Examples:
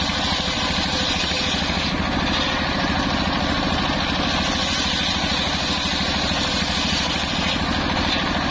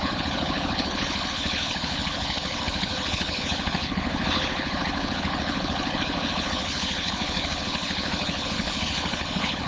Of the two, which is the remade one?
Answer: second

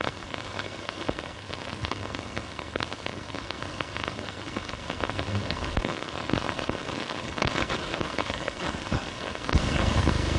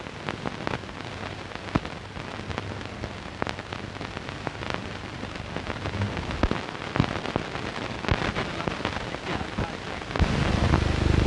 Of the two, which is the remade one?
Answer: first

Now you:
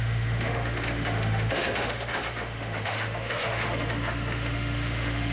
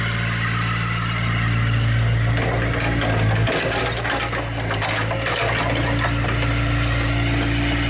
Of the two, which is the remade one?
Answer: first